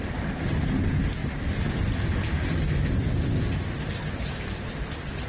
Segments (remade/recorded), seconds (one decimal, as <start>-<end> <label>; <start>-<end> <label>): 0.0-5.3 recorded